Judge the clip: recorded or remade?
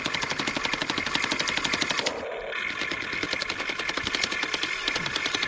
recorded